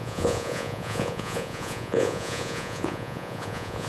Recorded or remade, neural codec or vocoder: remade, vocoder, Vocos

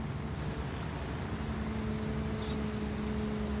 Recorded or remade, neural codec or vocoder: recorded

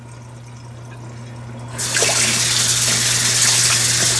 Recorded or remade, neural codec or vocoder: recorded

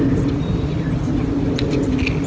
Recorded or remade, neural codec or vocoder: recorded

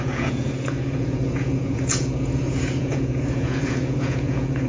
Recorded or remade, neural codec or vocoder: remade, vocoder, Vocos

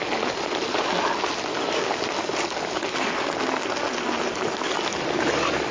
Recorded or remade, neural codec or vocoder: recorded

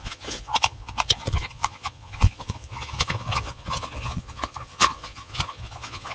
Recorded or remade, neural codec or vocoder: remade, vocoder, Vocos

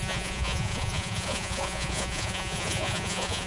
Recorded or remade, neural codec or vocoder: remade, vocoder, Vocos